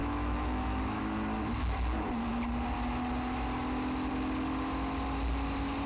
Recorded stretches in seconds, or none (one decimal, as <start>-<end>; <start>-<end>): 1.0-5.9